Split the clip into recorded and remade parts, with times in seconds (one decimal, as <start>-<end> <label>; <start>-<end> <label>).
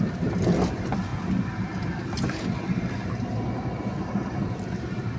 0.0-5.2 recorded